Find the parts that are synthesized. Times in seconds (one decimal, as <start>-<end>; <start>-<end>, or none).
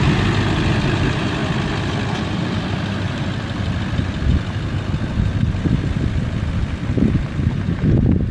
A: 0.0-1.4; 2.4-4.3; 7.5-8.3